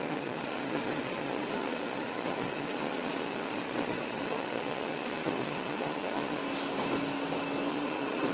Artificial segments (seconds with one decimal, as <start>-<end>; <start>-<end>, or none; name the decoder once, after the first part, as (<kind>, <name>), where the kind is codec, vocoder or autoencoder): 0.0-6.4 (vocoder, Vocos); 7.7-8.3